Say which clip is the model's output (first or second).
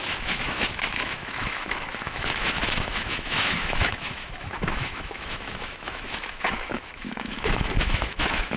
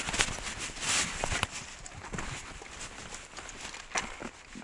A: first